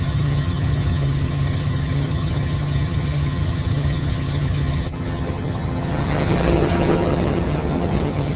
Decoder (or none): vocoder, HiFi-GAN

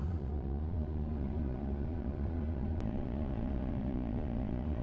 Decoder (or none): vocoder, Vocos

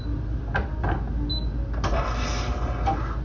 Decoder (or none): none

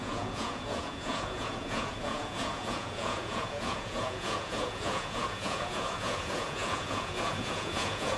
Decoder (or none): vocoder, Vocos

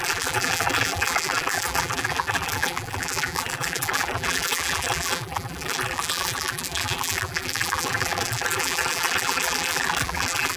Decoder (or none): vocoder, BigVGAN v2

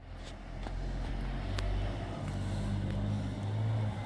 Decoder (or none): none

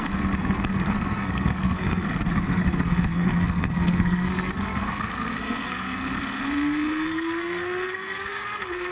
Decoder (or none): codec, SNAC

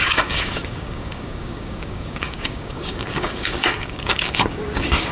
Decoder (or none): codec, DAC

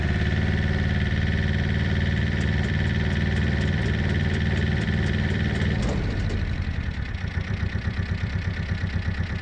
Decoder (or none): vocoder, BigVGAN v2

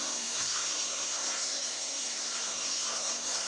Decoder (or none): codec, SNAC